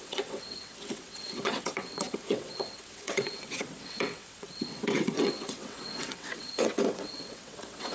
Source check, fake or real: fake